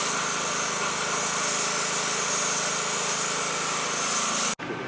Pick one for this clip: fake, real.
real